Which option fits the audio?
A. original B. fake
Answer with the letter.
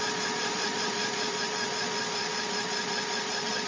B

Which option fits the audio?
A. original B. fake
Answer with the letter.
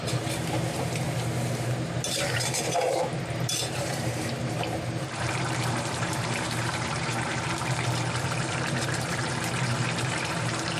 B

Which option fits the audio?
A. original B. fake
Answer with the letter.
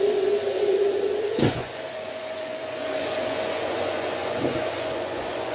B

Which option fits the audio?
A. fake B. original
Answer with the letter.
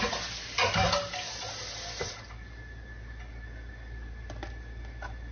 B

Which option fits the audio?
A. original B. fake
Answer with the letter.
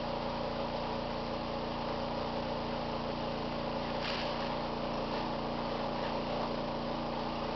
A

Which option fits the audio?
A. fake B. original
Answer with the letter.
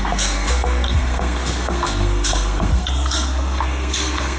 A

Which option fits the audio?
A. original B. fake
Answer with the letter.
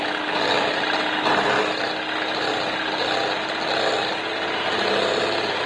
A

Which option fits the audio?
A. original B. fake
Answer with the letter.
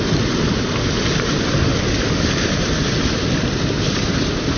A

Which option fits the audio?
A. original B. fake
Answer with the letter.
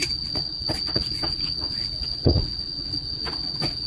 B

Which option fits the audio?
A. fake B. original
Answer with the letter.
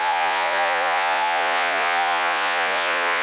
A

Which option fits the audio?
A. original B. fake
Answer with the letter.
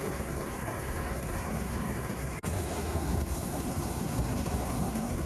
B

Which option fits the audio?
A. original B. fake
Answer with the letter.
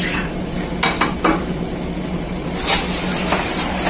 A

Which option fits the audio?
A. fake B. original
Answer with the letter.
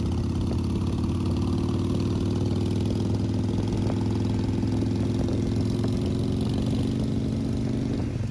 B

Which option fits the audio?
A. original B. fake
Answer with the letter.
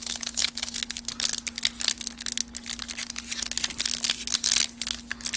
A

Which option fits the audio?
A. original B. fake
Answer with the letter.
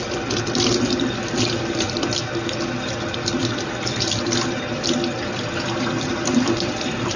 A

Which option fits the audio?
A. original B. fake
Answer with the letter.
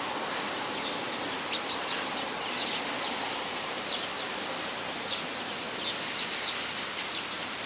B